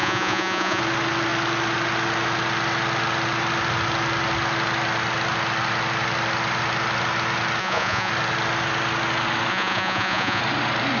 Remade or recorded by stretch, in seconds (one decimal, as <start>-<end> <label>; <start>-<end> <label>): 0.0-0.8 remade; 0.8-7.6 recorded; 7.6-8.1 remade; 8.1-9.5 recorded; 9.5-10.4 remade; 10.4-11.0 recorded